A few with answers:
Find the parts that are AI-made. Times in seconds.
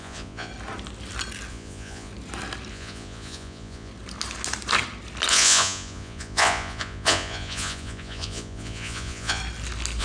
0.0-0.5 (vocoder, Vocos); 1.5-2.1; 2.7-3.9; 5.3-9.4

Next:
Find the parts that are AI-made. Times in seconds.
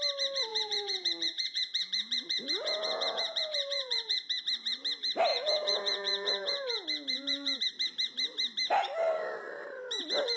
0.5-4.4 (vocoder, Vocos); 5.3-7.6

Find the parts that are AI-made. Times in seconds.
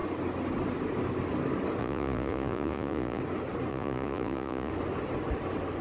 1.8-3.2 (vocoder, Vocos); 3.7-4.7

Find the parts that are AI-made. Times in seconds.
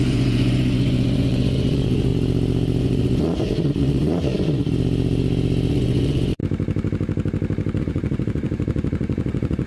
0.0-2.1 (vocoder, Vocos); 2.8-4.6; 5.7-6.4; 7.8-9.7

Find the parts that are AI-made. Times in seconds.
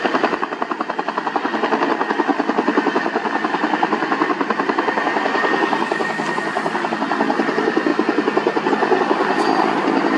none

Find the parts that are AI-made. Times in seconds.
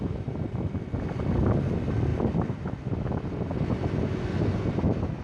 none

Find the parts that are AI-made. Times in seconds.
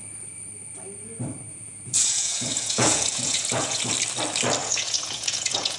1.5-3.9 (vocoder, Vocos); 4.6-5.8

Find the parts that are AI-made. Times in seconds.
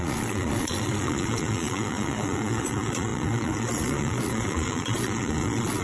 0.0-5.8 (vocoder, Vocos)